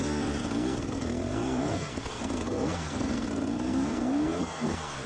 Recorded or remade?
remade